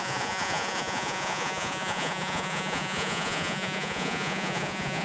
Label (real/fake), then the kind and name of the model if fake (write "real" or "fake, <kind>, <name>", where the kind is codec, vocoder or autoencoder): fake, vocoder, Vocos